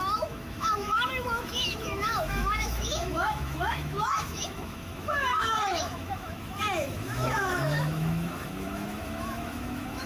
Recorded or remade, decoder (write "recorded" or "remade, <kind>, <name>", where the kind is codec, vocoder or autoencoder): remade, autoencoder, DAC-VAE